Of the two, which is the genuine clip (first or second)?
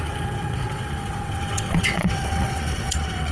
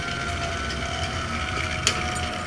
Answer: second